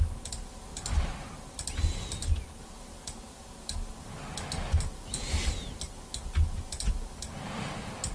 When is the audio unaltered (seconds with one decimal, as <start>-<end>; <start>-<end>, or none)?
0.0-8.1